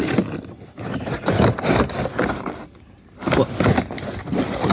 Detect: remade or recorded recorded